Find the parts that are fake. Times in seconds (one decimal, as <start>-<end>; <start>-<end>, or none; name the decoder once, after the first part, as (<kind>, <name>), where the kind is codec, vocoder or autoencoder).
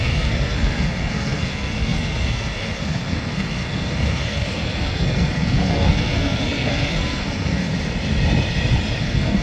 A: 0.0-7.7 (codec, SNAC); 9.0-9.4